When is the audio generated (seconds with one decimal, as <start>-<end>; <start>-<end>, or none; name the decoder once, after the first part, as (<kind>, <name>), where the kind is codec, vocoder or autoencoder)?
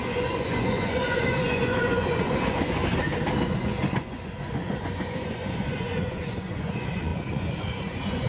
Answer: 0.0-2.8 (vocoder, Vocos); 3.5-8.3